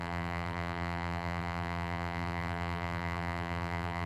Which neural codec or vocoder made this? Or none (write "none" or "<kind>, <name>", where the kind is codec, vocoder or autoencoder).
vocoder, BigVGAN v2